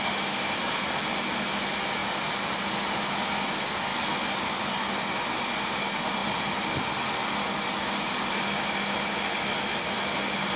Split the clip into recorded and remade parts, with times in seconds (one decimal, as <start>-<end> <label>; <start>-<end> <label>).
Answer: 0.0-2.0 recorded; 2.0-3.2 remade; 3.2-6.2 recorded; 6.2-10.6 remade